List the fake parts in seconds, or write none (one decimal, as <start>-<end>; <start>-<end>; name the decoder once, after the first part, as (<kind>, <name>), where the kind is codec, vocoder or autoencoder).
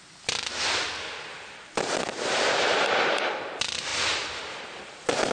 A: 1.3-3.5 (vocoder, BigVGAN v2); 3.9-4.8